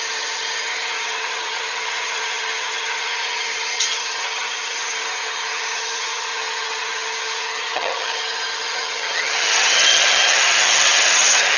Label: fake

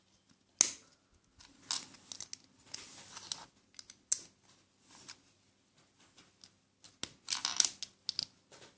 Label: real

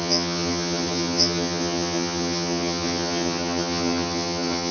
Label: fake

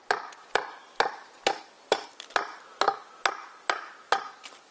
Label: real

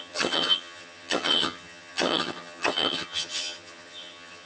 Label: fake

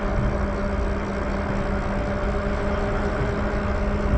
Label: real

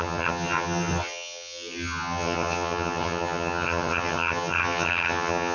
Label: fake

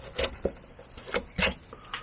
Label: real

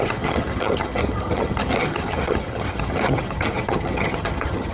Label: fake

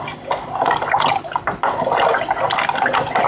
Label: real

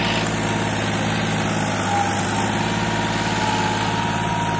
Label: real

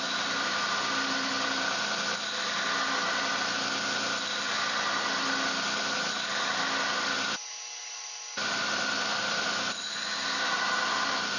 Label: real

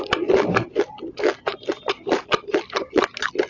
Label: real